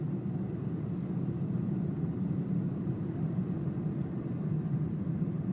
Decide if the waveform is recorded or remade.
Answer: recorded